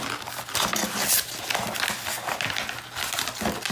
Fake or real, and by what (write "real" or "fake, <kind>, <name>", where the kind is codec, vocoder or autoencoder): real